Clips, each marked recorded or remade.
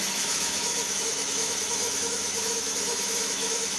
remade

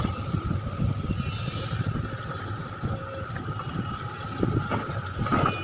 recorded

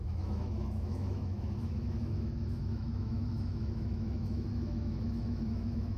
remade